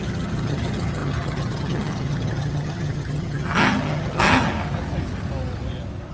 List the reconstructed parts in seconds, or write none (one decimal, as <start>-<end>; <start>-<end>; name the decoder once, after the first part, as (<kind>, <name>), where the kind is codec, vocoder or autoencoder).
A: 0.0-4.5 (vocoder, HiFi-GAN)